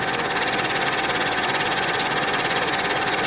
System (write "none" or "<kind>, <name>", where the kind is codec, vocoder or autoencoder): vocoder, Vocos